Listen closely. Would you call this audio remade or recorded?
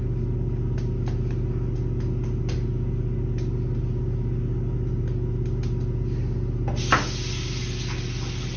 recorded